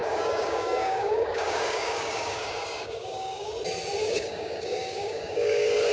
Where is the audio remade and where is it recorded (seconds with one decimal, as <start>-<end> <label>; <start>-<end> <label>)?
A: 0.0-3.5 remade; 3.5-4.0 recorded; 4.0-5.9 remade